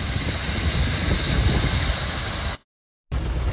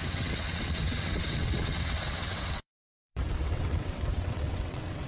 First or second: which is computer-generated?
second